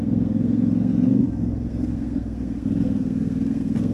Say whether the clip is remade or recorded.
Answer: remade